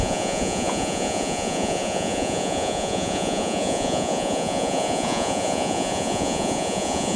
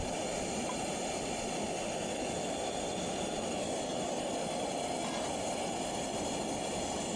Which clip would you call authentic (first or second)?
second